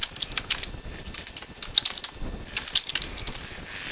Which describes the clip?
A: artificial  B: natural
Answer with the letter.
B